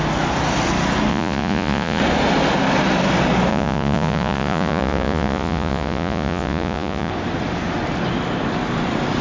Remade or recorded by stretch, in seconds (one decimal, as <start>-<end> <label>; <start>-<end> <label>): 0.0-1.1 recorded; 1.1-2.0 remade; 2.0-3.5 recorded; 3.5-7.1 remade; 7.1-9.2 recorded